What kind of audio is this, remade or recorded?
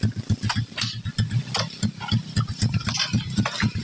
recorded